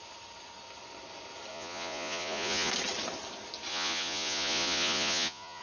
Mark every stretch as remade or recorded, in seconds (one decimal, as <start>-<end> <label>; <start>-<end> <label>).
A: 0.0-1.5 recorded; 1.5-2.7 remade; 2.7-3.7 recorded; 3.7-5.6 remade